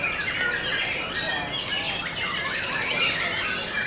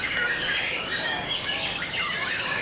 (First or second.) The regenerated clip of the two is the second